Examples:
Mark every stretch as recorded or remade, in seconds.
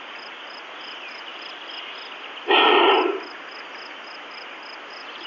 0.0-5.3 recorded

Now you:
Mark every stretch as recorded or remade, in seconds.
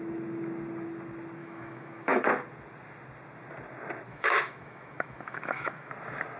0.0-1.4 recorded; 1.4-2.3 remade; 2.3-4.1 recorded; 4.1-5.9 remade; 5.9-6.4 recorded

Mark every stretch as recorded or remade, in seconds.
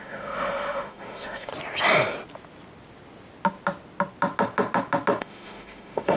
0.0-1.5 remade; 1.5-5.2 recorded; 5.2-6.2 remade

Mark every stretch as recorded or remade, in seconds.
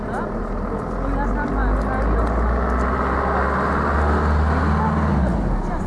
0.0-5.9 recorded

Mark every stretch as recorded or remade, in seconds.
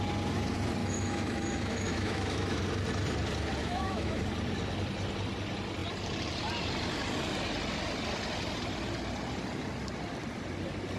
0.0-0.8 recorded; 0.8-2.6 remade; 2.6-3.6 recorded; 3.6-4.2 remade; 4.2-11.0 recorded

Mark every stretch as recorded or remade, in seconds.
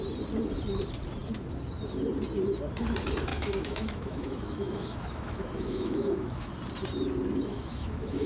0.0-3.3 recorded; 3.3-6.5 remade; 6.5-7.5 recorded; 7.5-8.3 remade